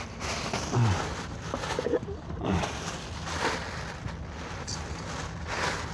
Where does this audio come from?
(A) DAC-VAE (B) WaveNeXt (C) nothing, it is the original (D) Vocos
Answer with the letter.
C